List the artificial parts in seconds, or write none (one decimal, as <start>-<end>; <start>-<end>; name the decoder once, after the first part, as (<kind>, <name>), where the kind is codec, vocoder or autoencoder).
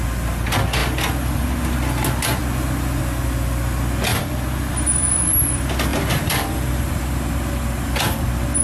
0.8-1.5 (vocoder, BigVGAN v2); 4.1-4.7; 5.9-6.9